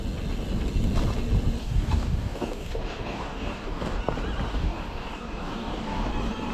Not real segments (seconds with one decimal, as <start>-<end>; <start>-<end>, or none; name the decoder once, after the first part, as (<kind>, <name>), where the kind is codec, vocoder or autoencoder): 1.6-4.0 (codec, DAC); 4.5-6.1